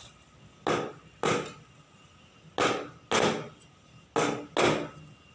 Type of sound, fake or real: real